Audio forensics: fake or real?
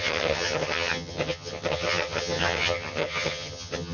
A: fake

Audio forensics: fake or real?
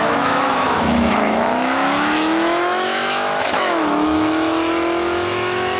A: fake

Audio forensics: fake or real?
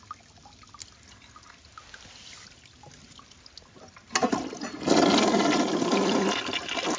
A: real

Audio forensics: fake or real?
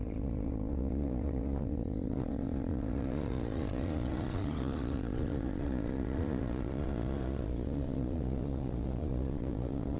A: fake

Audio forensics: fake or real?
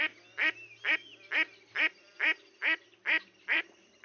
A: real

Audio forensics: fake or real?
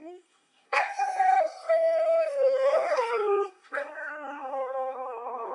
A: fake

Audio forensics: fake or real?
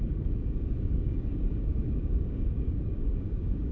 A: fake